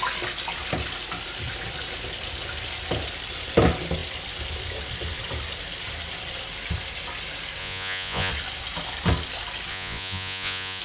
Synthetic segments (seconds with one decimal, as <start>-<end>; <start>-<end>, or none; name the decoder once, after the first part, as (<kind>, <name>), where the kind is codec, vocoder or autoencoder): 7.6-8.3 (vocoder, Vocos); 9.7-10.8